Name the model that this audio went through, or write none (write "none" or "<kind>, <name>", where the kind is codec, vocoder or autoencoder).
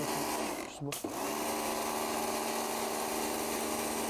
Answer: none